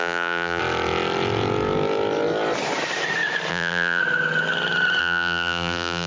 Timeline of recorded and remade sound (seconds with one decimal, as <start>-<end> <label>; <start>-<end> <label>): 0.0-0.6 remade; 0.6-3.5 recorded; 3.5-4.0 remade; 4.0-5.0 recorded; 5.0-6.1 remade